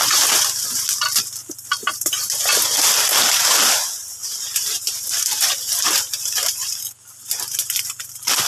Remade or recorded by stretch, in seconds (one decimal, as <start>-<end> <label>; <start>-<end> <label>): 0.0-1.8 recorded; 1.8-2.5 remade; 2.5-4.2 recorded; 4.2-6.8 remade; 6.8-8.5 recorded